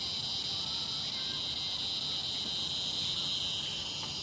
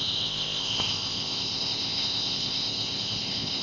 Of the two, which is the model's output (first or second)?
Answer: second